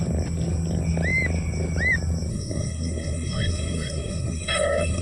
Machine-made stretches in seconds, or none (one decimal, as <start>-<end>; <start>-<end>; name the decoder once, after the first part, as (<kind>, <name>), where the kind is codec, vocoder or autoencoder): 2.3-5.0 (codec, SNAC)